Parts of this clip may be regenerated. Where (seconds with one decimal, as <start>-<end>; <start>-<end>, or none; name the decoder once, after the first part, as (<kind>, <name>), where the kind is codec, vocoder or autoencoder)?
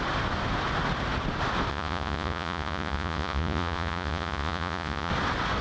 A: 1.7-5.1 (vocoder, Vocos)